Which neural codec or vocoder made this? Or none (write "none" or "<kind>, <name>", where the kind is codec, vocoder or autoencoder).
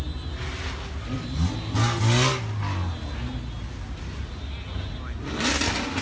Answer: none